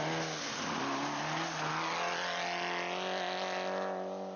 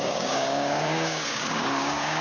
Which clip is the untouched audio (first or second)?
first